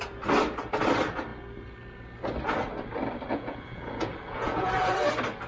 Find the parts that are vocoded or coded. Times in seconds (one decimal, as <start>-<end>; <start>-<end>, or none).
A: 3.3-4.7

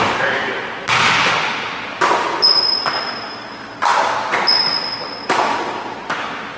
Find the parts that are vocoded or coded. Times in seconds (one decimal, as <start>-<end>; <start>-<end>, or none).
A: none

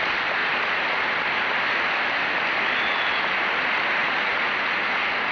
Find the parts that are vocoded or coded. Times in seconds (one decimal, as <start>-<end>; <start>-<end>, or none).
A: none

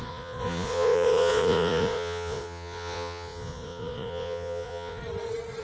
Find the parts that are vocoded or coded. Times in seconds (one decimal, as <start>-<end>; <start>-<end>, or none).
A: 0.0-5.0

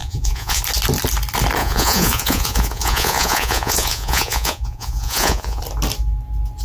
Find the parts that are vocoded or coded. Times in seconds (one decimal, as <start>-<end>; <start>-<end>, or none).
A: 0.0-0.6; 1.6-5.6

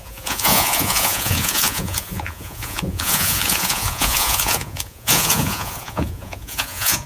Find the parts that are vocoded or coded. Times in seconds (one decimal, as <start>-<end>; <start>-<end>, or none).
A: 0.0-7.1

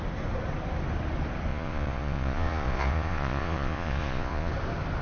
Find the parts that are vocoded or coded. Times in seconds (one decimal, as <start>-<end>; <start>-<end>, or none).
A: 1.5-4.5